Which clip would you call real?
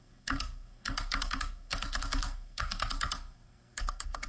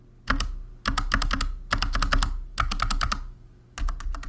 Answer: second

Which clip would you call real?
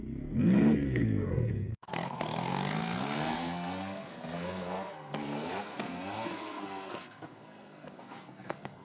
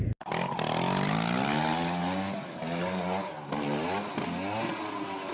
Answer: second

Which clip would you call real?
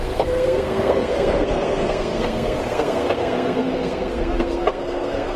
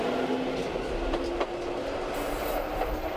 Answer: second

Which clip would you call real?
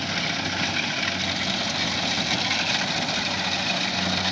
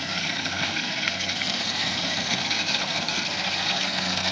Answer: first